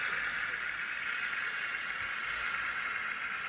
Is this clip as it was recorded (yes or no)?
yes